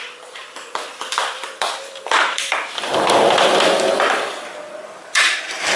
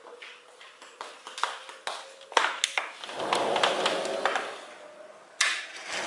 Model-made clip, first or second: first